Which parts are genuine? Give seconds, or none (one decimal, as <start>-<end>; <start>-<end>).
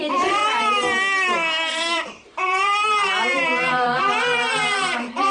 0.4-1.7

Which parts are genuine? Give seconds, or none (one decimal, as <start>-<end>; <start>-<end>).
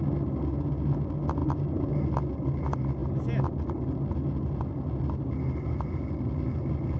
0.0-1.4; 1.9-7.0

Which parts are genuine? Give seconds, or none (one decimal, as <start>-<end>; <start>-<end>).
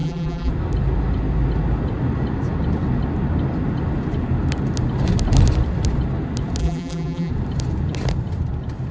0.5-6.6; 7.3-8.9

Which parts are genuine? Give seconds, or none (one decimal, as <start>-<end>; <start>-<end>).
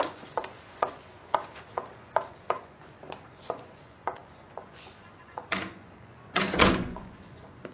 none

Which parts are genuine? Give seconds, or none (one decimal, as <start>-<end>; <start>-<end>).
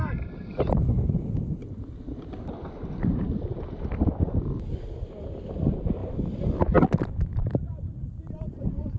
0.0-7.3